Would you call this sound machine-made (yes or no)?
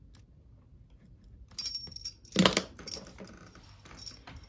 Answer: no